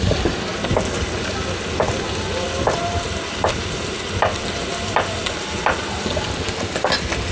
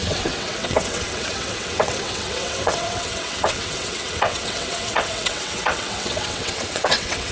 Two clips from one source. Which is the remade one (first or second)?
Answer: second